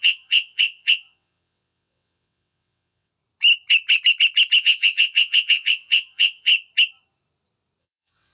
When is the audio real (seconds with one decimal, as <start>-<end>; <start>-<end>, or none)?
3.1-4.6; 6.5-7.8